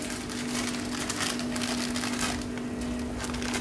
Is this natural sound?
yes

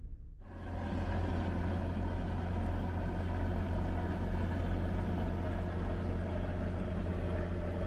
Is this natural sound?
yes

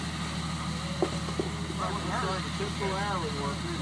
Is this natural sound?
yes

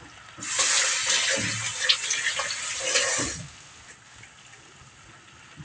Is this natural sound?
yes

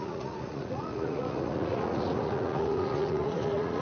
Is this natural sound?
no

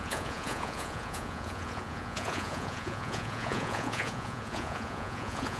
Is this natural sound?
no